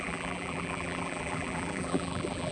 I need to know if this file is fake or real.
fake